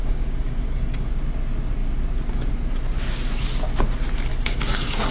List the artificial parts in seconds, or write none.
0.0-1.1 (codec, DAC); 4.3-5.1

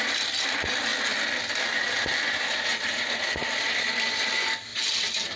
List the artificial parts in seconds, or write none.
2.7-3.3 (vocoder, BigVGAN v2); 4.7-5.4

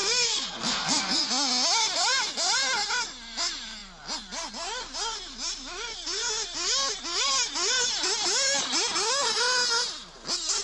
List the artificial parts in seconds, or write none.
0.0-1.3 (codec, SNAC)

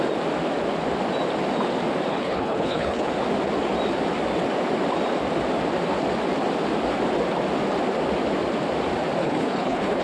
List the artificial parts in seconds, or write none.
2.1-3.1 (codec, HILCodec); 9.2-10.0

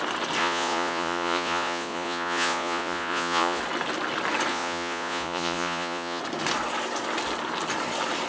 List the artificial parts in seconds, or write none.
0.4-3.6 (vocoder, Vocos); 4.5-6.2

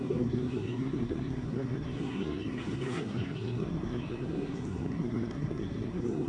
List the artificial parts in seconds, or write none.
0.0-6.3 (codec, SNAC)

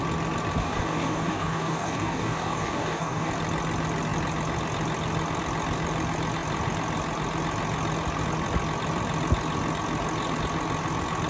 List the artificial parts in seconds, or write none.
0.6-3.3 (codec, DAC)

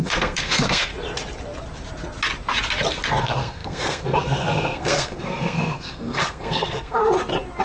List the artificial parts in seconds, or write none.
0.0-0.9 (codec, SNAC); 3.2-7.0